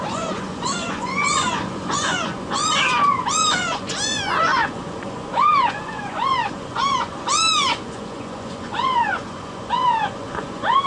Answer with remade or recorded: remade